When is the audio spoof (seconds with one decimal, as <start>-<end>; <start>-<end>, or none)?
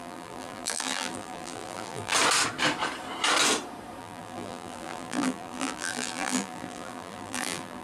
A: 0.0-2.1; 4.0-7.8